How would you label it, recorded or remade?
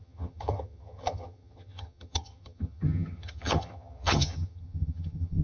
remade